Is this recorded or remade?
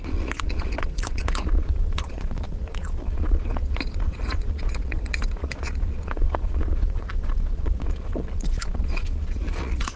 remade